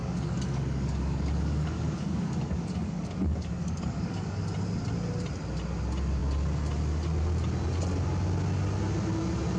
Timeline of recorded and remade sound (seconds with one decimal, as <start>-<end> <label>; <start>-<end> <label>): 0.0-4.4 remade; 4.4-9.6 recorded

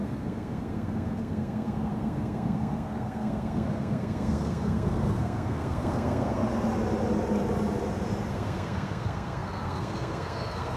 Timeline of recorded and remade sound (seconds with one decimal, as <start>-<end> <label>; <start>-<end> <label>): 0.0-6.4 remade; 6.4-8.3 recorded; 8.3-10.8 remade

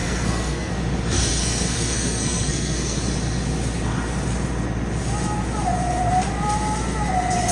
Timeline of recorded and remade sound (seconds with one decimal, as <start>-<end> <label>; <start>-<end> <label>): 0.0-0.7 remade; 0.7-1.4 recorded; 1.4-3.0 remade; 3.0-7.5 recorded

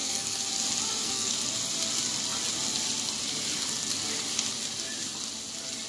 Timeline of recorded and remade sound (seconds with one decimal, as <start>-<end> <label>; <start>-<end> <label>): 0.0-0.5 remade; 0.5-0.9 recorded; 0.9-1.4 remade; 1.4-5.9 recorded

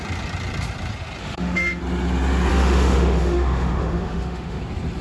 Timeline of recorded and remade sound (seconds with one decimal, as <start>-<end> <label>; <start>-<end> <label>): 0.0-1.2 recorded; 1.2-1.8 remade; 1.8-2.5 recorded; 2.5-4.6 remade; 4.6-5.0 recorded